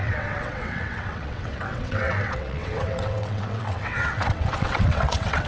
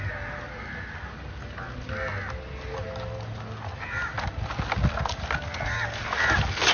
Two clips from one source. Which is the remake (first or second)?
first